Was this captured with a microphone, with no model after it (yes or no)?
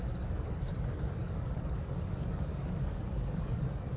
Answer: no